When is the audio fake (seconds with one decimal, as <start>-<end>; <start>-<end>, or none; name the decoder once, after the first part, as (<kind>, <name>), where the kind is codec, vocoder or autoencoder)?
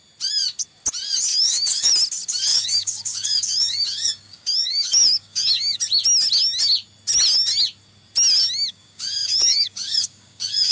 1.3-1.9 (codec, DAC); 2.5-5.8; 8.7-10.7